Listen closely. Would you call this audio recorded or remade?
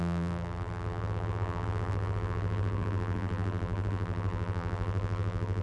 remade